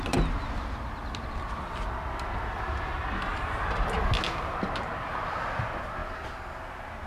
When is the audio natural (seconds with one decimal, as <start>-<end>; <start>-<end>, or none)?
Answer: 0.0-7.1